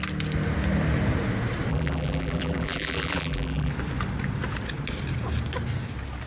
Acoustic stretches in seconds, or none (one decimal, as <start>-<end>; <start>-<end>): 0.0-1.7; 3.7-6.3